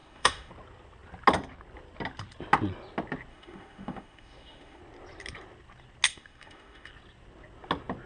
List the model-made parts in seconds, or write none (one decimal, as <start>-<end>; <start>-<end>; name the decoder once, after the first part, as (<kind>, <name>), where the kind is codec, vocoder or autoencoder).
0.0-0.5 (autoencoder, DAC-VAE); 3.3-4.8; 6.1-6.9